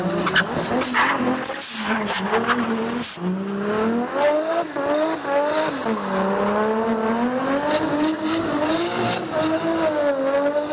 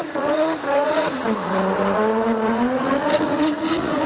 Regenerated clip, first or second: second